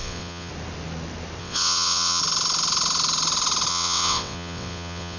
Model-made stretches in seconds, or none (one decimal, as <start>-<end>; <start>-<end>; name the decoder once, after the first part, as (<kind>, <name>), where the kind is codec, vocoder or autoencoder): 0.0-0.5 (vocoder, WaveNeXt); 1.4-2.2; 3.7-5.2

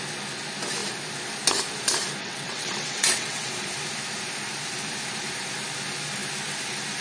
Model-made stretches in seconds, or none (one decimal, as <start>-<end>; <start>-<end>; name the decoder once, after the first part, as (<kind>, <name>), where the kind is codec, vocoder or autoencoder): 2.2-3.5 (vocoder, WaveNeXt)

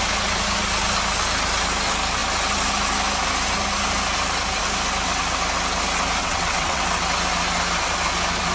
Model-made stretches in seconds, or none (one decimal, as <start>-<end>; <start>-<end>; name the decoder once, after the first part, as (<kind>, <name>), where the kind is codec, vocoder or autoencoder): 6.2-6.8 (vocoder, WaveNeXt)

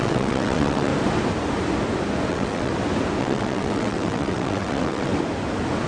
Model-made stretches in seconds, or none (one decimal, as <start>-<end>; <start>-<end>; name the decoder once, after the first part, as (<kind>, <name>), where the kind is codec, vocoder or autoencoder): 0.0-0.9 (vocoder, WaveNeXt); 2.3-2.7; 3.2-5.1

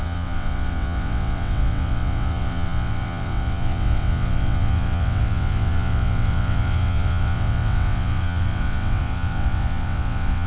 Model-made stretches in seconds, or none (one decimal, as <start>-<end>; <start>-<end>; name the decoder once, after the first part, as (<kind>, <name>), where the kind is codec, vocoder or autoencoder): 0.0-10.5 (vocoder, WaveNeXt)

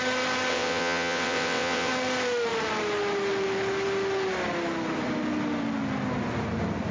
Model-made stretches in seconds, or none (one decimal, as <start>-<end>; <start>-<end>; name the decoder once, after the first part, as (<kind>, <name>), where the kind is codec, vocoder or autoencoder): 0.5-1.9 (vocoder, WaveNeXt)

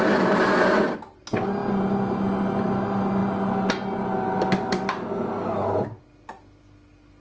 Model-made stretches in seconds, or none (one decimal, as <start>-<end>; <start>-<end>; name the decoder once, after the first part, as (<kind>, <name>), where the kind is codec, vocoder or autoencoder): none

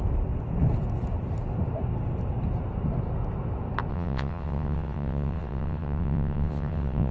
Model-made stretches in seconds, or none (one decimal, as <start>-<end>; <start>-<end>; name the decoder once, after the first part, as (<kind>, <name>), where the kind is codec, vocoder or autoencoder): 3.9-7.1 (vocoder, WaveNeXt)